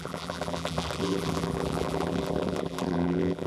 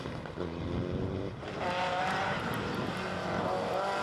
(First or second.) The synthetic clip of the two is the first